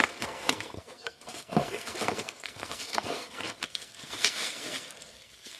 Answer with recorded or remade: remade